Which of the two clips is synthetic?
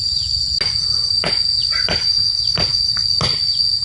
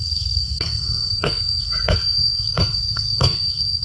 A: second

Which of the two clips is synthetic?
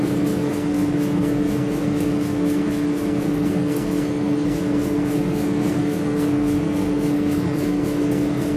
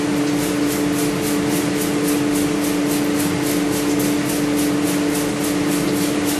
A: first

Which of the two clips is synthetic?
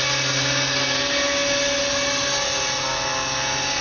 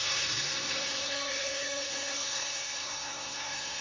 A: second